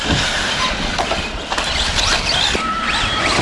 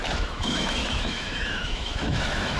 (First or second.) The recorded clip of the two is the first